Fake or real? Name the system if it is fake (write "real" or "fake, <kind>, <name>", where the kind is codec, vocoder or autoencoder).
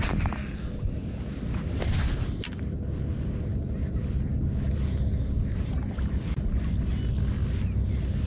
real